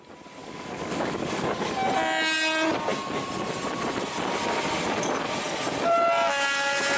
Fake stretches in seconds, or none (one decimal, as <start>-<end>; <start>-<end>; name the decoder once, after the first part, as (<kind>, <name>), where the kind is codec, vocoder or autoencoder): 0.4-1.7 (codec, DAC)

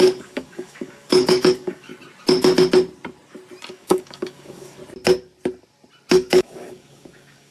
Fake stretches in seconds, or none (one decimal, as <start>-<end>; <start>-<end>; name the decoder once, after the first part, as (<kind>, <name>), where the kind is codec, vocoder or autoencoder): 0.0-1.9 (codec, DAC); 3.7-4.8; 6.1-7.5